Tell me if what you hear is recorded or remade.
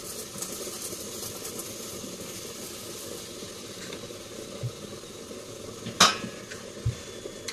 recorded